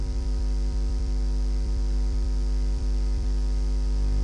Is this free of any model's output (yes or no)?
no